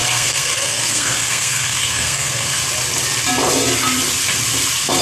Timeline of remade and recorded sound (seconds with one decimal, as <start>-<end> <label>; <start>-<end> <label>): 0.0-2.6 remade; 2.6-5.0 recorded